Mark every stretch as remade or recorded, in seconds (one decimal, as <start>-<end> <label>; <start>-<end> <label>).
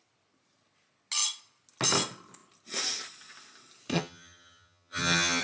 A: 0.0-3.9 recorded; 3.9-5.4 remade